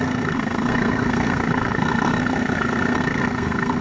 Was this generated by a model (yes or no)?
yes